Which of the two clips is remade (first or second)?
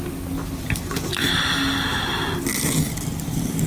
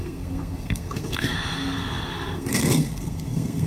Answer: second